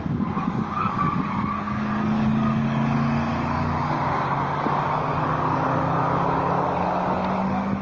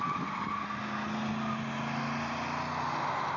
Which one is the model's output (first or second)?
first